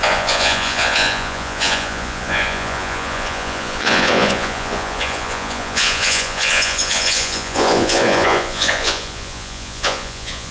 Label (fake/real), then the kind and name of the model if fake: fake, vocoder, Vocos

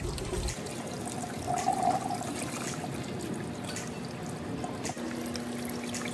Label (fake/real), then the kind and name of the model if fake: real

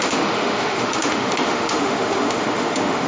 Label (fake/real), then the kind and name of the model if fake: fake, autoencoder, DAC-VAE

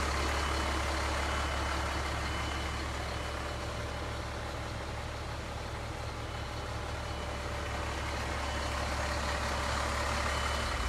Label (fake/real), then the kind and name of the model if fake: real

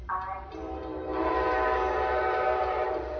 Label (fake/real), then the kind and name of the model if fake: fake, vocoder, BigVGAN v2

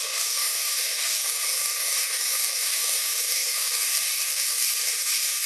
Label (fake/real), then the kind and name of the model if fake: fake, codec, DAC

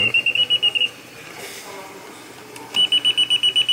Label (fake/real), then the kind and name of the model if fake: real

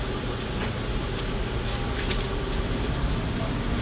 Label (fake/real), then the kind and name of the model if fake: real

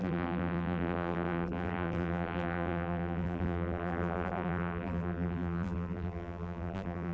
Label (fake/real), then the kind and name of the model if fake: fake, vocoder, BigVGAN v2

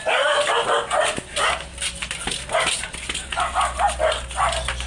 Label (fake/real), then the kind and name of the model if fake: real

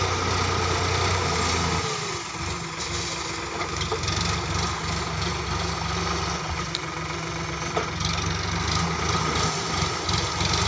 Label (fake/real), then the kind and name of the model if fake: real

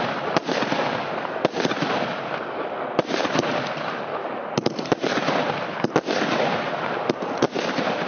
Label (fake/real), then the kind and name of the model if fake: fake, vocoder, BigVGAN v2